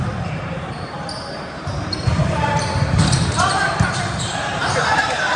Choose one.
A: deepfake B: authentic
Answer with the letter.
A